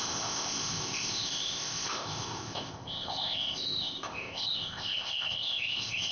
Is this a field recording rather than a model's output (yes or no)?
no